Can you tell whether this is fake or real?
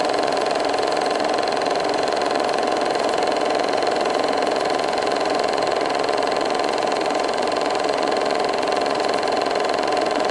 fake